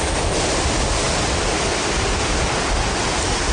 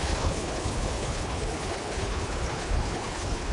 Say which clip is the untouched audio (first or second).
first